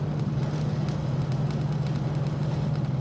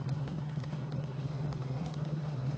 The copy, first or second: second